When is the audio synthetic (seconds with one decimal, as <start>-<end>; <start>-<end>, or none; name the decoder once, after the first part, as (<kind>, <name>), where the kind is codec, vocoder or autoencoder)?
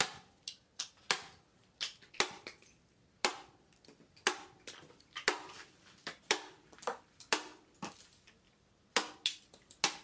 none